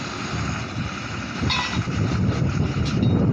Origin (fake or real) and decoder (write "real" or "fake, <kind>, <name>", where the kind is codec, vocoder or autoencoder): fake, vocoder, BigVGAN v2